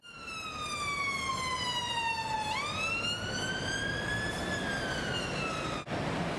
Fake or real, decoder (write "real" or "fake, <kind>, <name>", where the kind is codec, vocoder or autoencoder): real